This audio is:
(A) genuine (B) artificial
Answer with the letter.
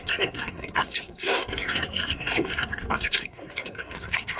B